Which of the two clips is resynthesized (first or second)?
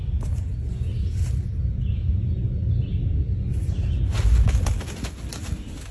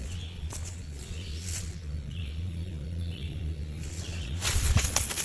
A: second